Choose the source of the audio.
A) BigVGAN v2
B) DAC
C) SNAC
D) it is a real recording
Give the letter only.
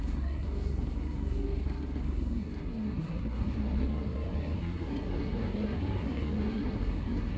C